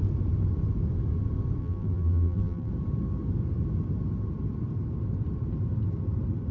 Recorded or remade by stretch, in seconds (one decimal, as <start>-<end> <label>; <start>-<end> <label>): 0.0-1.6 recorded; 1.6-2.7 remade; 2.7-6.5 recorded